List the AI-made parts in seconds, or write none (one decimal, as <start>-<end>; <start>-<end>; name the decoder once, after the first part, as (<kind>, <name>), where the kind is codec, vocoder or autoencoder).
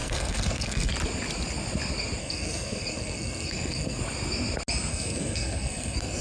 0.0-0.9 (codec, SNAC); 2.2-4.0; 4.9-6.2